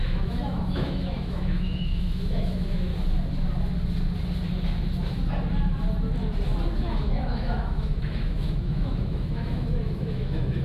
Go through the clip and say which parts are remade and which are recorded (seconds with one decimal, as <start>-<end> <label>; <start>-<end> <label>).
0.0-2.9 remade; 2.9-6.8 recorded; 6.8-10.6 remade